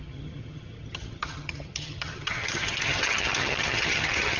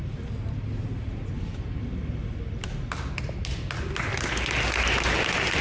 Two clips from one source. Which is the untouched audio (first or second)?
second